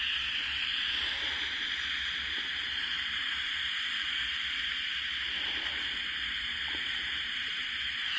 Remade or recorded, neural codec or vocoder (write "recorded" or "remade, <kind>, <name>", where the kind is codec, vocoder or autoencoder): remade, vocoder, BigVGAN v2